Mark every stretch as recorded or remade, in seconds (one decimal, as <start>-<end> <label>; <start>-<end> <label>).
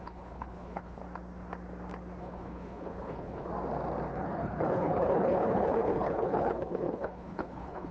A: 0.0-1.0 remade; 1.0-2.2 recorded; 2.2-3.5 remade; 3.5-4.1 recorded; 4.1-7.9 remade